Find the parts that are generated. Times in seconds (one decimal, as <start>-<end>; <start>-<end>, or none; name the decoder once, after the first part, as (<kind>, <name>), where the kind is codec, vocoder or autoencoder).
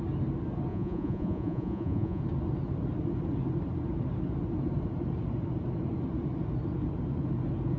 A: 0.7-2.2 (vocoder, Vocos)